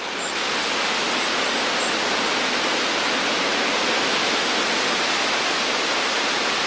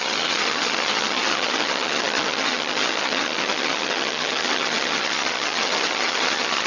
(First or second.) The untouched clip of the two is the first